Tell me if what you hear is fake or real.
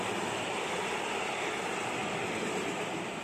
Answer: real